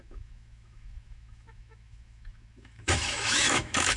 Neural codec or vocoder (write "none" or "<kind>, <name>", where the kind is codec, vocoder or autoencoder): autoencoder, DAC-VAE